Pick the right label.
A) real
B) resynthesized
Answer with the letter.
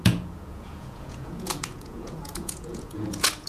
B